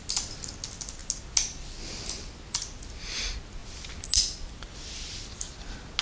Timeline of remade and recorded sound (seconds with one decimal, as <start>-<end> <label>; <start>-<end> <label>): 0.0-6.0 recorded